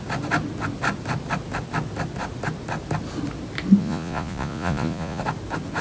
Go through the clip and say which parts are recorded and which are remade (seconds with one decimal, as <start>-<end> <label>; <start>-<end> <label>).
0.0-3.8 recorded; 3.8-5.2 remade; 5.2-5.8 recorded